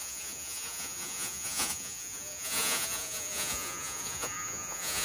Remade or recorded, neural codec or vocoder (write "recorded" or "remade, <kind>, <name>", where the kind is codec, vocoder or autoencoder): remade, vocoder, Vocos